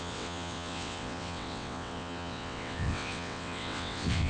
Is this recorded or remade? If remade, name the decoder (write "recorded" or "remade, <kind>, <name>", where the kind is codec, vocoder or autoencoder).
remade, vocoder, WaveNeXt